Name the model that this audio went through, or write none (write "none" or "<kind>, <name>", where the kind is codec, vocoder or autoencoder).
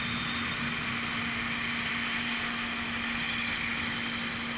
none